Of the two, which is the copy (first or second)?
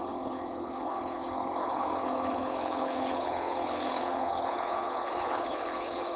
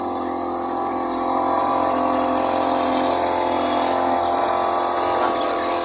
first